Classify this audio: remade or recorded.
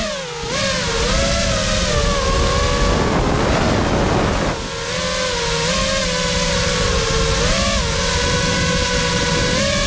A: recorded